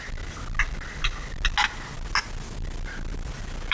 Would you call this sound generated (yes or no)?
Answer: no